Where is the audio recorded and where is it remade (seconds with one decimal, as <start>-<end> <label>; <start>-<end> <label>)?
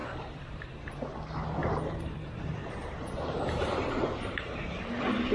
0.0-1.1 remade; 1.1-1.6 recorded; 1.6-4.8 remade; 4.8-5.3 recorded